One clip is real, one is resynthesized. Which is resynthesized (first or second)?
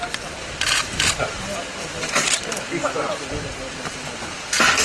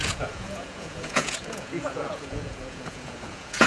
second